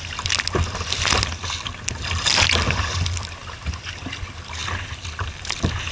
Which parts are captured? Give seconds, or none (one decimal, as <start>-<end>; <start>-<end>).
0.0-5.9